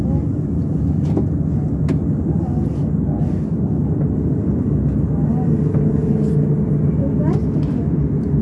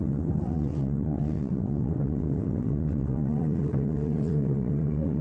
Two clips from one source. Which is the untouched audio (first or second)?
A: first